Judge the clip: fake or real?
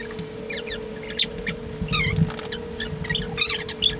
real